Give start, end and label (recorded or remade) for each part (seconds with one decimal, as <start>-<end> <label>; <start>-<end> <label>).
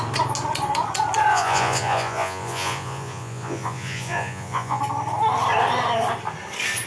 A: 0.0-1.3 recorded; 1.3-4.8 remade; 4.8-6.9 recorded